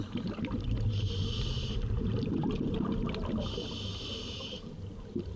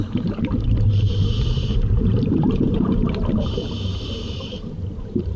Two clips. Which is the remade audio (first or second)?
second